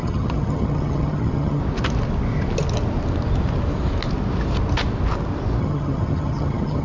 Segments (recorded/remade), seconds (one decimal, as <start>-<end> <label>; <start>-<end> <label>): 0.0-1.6 remade; 1.6-5.6 recorded; 5.6-6.8 remade